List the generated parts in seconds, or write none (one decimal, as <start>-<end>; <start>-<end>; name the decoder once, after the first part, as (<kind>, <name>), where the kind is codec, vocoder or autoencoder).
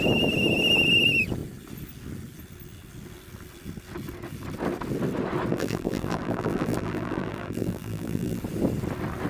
5.5-8.4 (vocoder, BigVGAN v2)